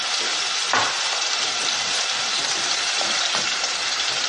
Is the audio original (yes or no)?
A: no